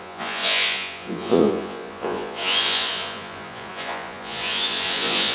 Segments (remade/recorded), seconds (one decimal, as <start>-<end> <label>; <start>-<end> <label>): 0.0-5.3 remade